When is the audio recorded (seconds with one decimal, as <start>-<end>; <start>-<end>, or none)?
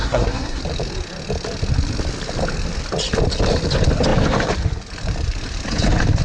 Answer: 0.6-6.2